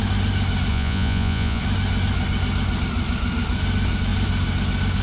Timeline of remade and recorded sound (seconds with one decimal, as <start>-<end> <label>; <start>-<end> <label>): 0.0-0.7 recorded; 0.7-1.6 remade; 1.6-5.0 recorded